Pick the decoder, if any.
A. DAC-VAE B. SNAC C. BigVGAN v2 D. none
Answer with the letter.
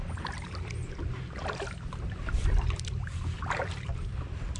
C